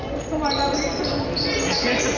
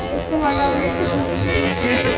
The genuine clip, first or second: first